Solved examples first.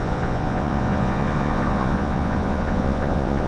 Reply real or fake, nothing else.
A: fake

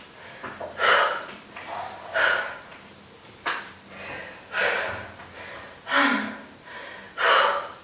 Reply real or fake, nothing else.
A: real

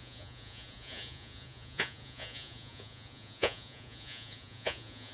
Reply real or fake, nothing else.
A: fake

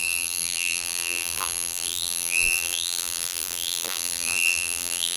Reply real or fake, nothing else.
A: fake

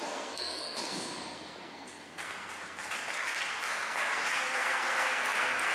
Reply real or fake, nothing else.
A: fake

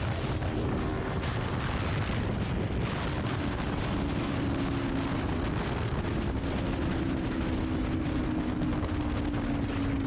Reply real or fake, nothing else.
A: real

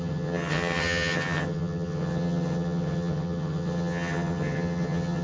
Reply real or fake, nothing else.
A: fake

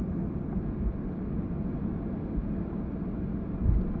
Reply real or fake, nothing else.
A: real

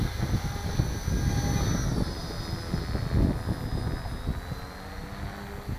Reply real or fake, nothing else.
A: real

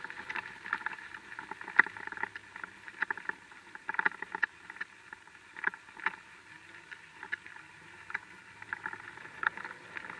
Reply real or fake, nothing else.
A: real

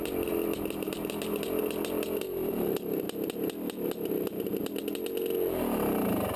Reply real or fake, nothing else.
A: real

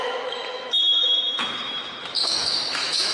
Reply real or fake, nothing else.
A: fake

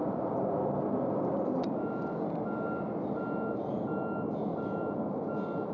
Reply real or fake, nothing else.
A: real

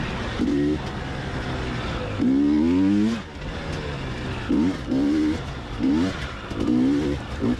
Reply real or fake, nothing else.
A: real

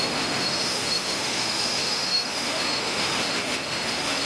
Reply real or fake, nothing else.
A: fake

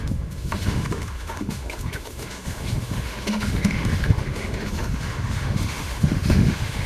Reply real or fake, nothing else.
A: fake